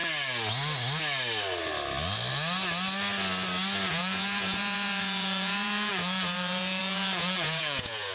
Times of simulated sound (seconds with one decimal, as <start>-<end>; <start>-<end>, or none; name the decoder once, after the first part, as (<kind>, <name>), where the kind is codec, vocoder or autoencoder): 3.9-8.1 (vocoder, Vocos)